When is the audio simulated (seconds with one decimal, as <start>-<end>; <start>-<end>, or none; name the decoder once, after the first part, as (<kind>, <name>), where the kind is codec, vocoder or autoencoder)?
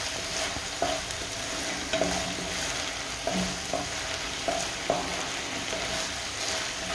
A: none